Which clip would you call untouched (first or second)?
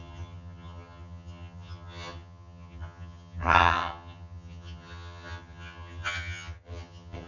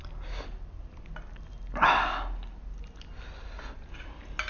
second